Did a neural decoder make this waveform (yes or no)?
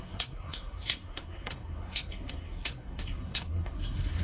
yes